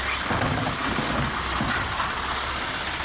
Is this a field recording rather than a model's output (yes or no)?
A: yes